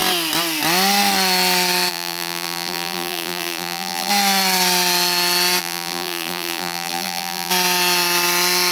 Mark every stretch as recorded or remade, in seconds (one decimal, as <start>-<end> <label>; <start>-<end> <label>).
0.0-1.9 recorded; 1.9-4.1 remade; 4.1-5.6 recorded; 5.6-7.5 remade; 7.5-8.7 recorded